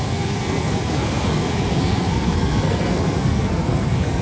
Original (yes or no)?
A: no